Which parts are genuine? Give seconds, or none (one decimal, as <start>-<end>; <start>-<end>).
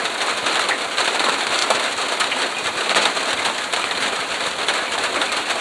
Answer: 1.6-3.7